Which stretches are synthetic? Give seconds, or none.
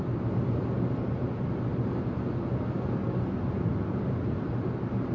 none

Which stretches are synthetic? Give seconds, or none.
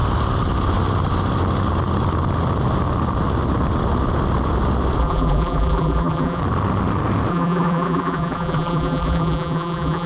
5.0-6.4 (vocoder, BigVGAN v2); 7.3-10.1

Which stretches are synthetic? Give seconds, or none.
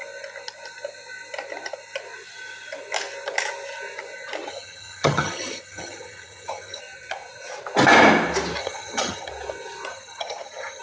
4.5-6.8 (vocoder, HiFi-GAN); 8.6-9.3; 9.9-10.8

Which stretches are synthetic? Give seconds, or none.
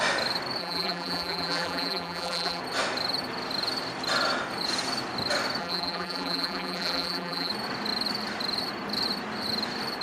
0.6-2.6 (vocoder, BigVGAN v2); 5.6-7.5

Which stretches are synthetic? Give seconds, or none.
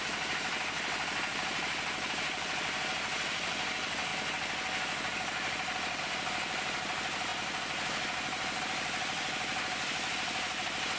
0.0-4.1 (vocoder, BigVGAN v2); 6.0-7.3; 8.6-11.0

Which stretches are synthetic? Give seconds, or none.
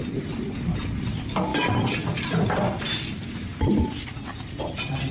none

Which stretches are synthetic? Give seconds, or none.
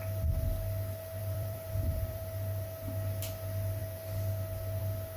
1.2-2.2 (vocoder, BigVGAN v2)